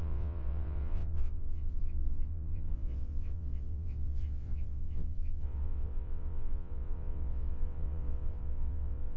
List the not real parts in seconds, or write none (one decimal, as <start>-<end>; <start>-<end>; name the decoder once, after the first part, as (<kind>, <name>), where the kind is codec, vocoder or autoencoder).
0.0-9.2 (vocoder, WaveNeXt)